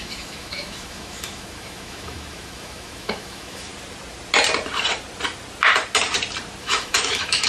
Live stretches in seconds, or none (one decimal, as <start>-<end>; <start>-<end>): 3.7-6.6